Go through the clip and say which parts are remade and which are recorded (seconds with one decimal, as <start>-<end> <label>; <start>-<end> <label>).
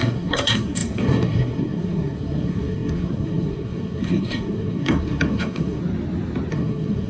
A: 0.0-5.8 remade; 5.8-6.5 recorded; 6.5-7.1 remade